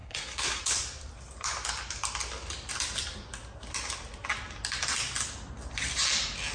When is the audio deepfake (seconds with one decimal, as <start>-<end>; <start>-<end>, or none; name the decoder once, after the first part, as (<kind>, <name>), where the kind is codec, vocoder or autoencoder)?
0.0-0.6 (codec, SNAC)